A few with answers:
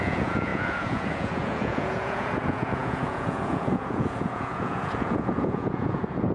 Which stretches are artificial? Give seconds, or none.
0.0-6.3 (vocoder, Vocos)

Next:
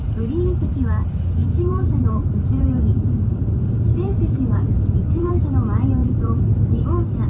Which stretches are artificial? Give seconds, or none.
1.4-5.3 (vocoder, BigVGAN v2); 6.0-6.8

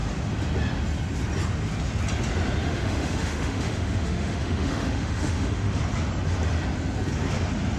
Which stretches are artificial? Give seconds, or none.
2.6-5.8 (autoencoder, DAC-VAE)

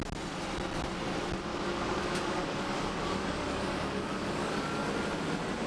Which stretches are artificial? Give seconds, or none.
1.5-4.9 (codec, DAC)

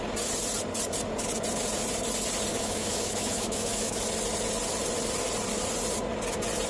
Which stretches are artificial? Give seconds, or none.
2.5-4.0 (autoencoder, DAC-VAE)

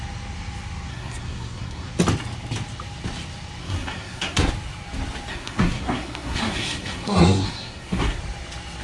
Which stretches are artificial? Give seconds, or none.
0.9-1.9 (codec, SNAC); 3.6-4.5; 5.3-8.2